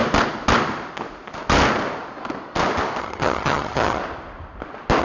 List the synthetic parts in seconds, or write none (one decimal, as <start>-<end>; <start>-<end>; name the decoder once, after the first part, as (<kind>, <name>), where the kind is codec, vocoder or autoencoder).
3.0-4.0 (vocoder, HiFi-GAN)